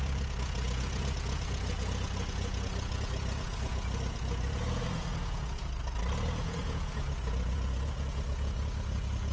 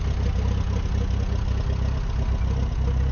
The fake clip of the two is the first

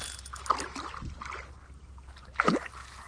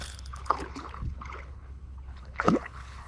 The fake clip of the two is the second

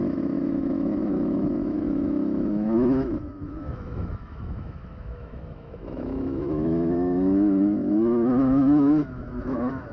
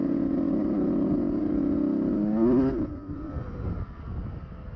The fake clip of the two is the first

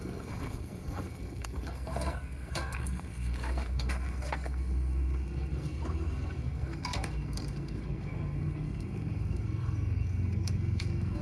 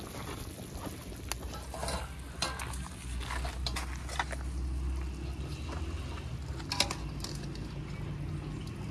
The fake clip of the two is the first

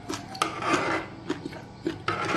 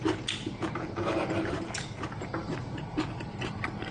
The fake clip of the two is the second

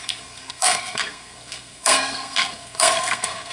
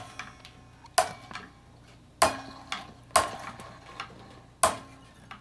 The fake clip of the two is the first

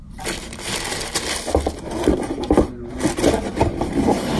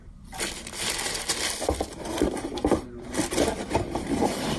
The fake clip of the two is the second